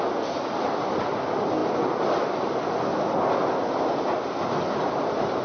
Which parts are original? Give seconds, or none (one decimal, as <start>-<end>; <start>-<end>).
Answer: 0.0-5.4